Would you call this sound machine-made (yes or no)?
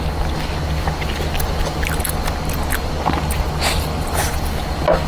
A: no